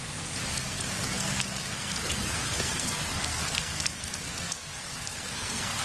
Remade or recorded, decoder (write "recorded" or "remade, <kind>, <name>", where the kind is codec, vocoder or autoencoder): remade, codec, SNAC